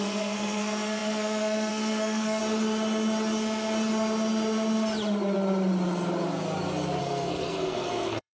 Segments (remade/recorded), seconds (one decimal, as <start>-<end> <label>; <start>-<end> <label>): 0.0-2.4 remade; 2.4-7.0 recorded; 7.0-8.3 remade